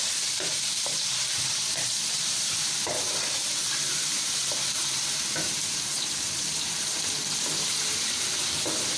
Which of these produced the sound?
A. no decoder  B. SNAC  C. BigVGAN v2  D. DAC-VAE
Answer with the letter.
C